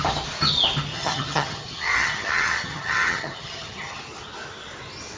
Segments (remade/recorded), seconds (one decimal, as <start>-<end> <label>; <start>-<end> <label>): 0.0-0.9 recorded; 0.9-4.0 remade; 4.0-5.2 recorded